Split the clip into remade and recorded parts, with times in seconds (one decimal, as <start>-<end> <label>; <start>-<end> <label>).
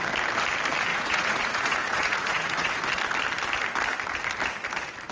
0.0-0.9 recorded; 0.9-2.8 remade; 2.8-5.1 recorded